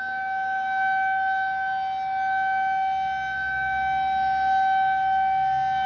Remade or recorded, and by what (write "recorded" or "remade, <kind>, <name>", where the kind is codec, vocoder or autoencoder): recorded